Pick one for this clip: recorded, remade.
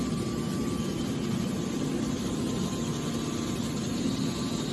recorded